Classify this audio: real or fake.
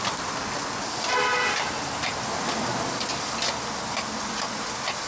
real